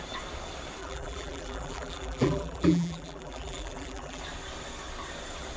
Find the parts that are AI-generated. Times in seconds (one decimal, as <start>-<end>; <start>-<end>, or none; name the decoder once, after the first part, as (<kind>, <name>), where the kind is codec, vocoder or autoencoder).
0.8-4.2 (vocoder, BigVGAN v2)